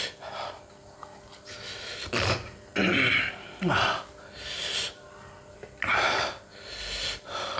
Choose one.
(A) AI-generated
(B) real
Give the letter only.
B